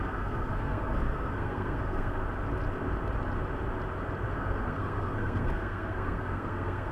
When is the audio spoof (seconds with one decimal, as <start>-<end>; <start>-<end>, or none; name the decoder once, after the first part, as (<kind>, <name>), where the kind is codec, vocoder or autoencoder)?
0.0-2.2 (codec, SNAC); 4.3-6.9